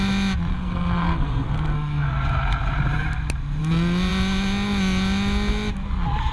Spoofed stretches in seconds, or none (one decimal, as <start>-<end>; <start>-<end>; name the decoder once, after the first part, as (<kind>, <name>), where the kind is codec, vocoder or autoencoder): 0.5-2.1 (codec, SNAC)